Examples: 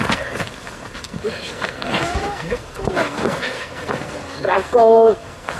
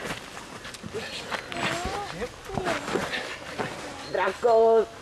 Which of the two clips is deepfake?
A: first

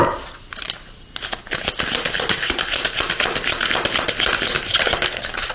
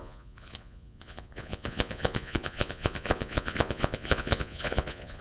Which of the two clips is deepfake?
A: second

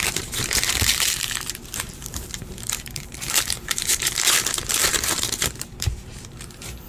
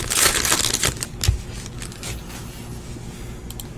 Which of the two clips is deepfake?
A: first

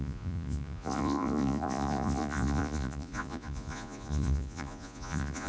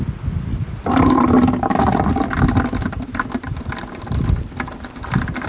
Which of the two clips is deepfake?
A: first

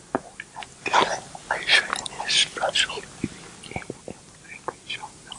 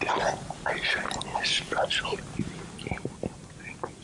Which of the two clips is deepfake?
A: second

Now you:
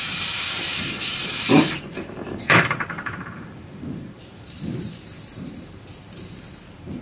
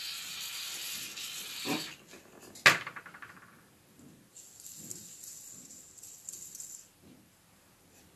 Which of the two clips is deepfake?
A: first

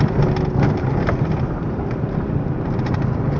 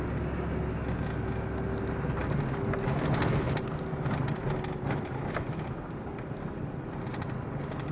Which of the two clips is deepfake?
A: first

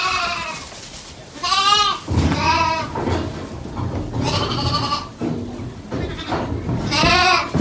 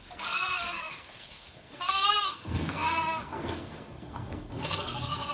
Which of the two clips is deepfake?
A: second